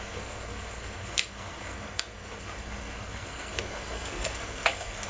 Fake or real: fake